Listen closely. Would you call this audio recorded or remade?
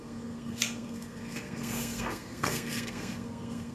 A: remade